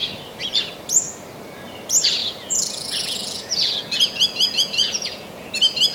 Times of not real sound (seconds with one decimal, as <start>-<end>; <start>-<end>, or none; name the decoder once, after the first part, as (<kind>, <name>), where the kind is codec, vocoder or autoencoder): 2.2-5.5 (vocoder, Vocos)

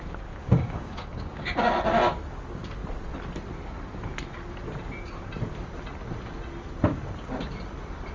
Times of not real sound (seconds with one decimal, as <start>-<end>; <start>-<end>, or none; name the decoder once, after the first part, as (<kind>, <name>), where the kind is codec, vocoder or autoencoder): 0.4-1.6 (codec, DAC)

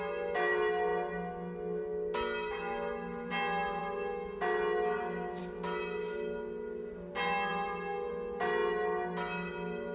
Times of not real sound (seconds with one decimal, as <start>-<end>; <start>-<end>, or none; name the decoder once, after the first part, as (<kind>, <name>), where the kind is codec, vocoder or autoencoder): none